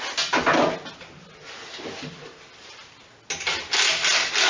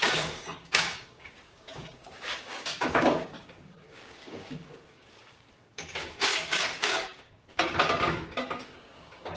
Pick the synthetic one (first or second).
second